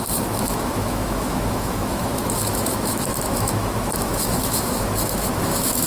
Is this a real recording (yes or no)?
no